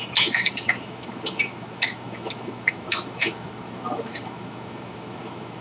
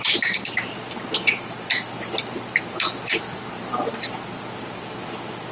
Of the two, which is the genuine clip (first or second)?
second